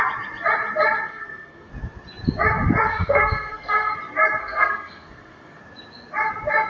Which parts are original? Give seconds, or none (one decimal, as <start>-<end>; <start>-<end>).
0.0-1.1; 1.7-2.9; 3.9-4.4; 5.6-6.7